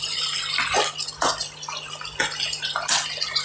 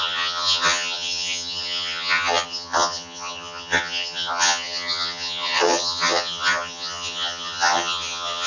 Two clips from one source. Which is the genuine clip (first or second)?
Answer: first